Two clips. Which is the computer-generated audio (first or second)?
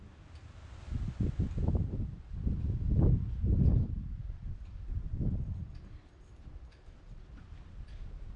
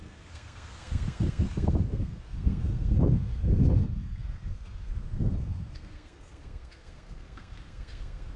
second